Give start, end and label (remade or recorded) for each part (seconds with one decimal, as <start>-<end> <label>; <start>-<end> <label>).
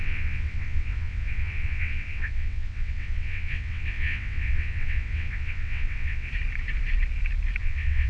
0.0-6.3 remade; 6.3-7.6 recorded; 7.6-8.1 remade